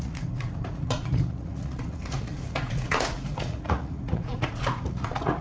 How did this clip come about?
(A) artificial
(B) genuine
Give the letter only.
A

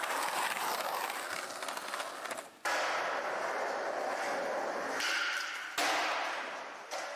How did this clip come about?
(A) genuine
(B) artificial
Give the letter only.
A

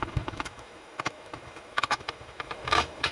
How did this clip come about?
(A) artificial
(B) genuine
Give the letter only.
A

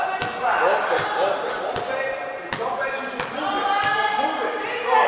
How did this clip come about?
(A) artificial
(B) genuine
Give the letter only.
B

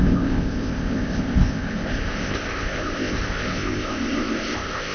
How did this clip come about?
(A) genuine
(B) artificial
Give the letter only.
B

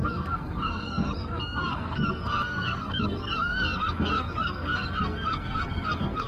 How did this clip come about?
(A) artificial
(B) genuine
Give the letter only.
A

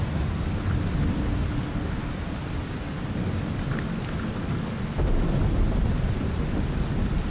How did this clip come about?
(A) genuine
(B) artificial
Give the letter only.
A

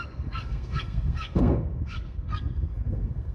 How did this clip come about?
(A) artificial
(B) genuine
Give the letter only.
A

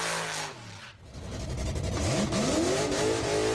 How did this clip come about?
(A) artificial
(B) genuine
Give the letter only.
B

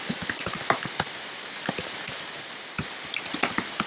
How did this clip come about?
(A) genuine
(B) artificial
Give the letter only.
A